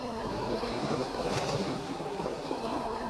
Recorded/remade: remade